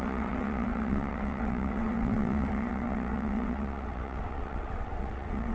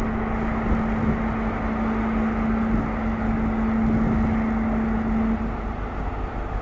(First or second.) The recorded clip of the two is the second